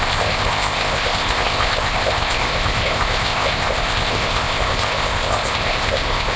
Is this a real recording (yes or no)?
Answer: no